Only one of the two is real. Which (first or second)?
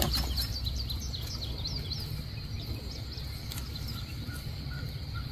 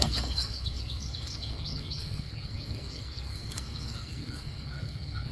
first